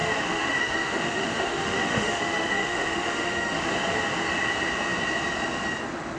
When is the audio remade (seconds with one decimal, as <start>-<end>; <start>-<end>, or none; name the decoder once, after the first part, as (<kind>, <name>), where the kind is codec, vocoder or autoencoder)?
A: 0.0-3.7 (autoencoder, DAC-VAE)